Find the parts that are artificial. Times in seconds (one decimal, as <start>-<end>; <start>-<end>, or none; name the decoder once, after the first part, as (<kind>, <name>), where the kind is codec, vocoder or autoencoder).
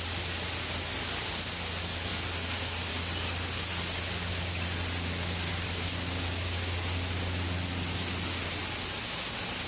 none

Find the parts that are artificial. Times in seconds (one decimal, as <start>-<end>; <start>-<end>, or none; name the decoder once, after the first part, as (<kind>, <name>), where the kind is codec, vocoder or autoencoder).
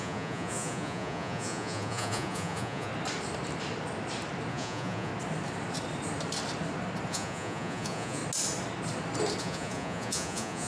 0.0-2.9 (vocoder, Vocos); 4.5-5.1; 7.1-8.2; 9.4-10.7